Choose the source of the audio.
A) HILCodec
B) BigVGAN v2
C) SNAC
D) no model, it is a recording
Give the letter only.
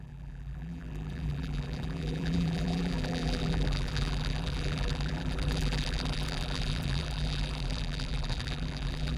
B